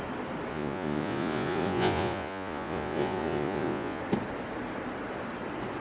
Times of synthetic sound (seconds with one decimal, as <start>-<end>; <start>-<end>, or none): 0.5-4.0

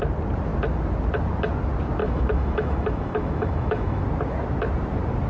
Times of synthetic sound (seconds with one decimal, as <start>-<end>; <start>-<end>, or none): 2.0-4.0

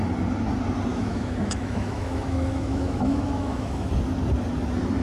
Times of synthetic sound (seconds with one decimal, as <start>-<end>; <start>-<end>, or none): 0.9-3.9

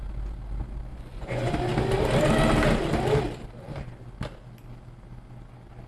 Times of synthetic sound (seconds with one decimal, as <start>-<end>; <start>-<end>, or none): 0.9-1.5

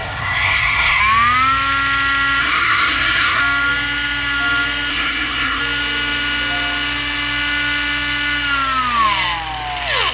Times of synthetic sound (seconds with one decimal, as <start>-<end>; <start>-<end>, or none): 0.0-1.0; 2.4-3.4; 4.9-5.6